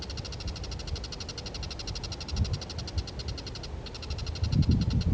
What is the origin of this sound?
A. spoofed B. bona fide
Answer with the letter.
B